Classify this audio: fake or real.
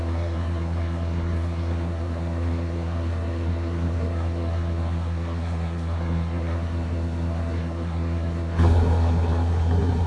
fake